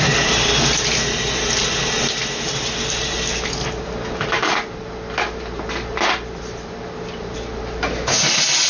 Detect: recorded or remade recorded